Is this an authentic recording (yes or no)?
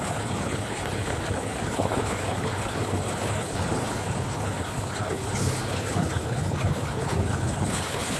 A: no